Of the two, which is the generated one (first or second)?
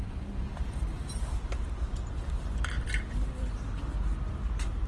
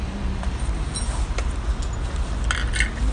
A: first